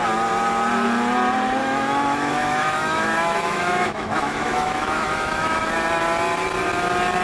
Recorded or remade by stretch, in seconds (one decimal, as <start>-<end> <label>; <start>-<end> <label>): 0.0-1.6 recorded; 1.6-5.7 remade; 5.7-7.2 recorded